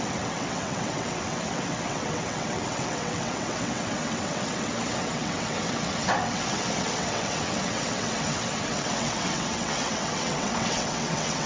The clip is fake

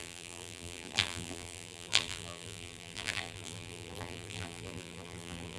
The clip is fake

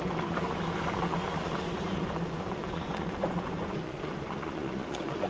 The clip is fake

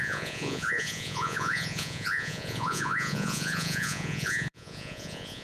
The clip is fake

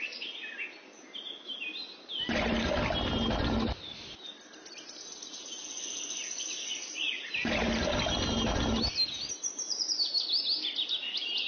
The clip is real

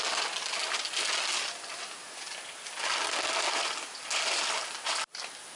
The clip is real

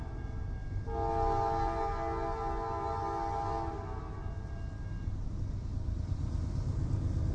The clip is real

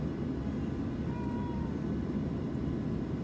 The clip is real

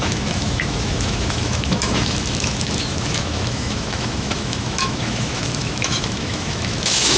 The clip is fake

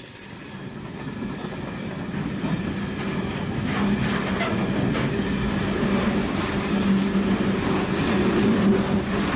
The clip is real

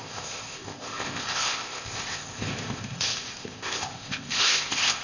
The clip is fake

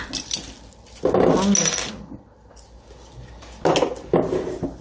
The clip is real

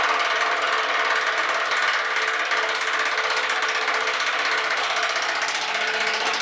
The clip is real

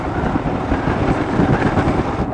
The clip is real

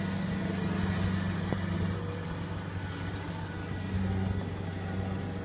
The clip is real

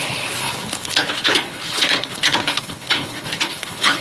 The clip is fake